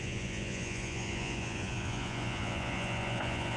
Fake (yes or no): yes